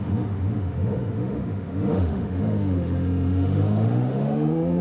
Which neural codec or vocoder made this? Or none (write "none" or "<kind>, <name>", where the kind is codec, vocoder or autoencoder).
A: autoencoder, DAC-VAE